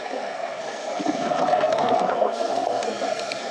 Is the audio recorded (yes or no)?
no